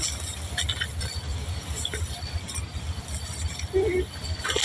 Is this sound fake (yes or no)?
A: no